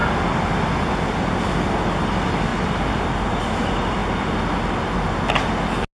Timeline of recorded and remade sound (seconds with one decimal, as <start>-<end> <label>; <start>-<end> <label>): 0.0-2.5 recorded; 2.5-3.0 remade; 3.0-6.0 recorded